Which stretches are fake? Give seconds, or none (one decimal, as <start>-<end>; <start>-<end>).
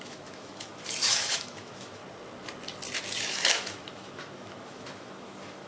0.0-2.0; 3.2-5.7